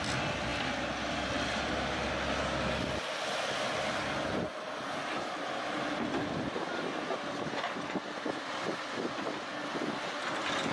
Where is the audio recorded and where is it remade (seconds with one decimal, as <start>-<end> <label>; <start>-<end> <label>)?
0.0-10.7 recorded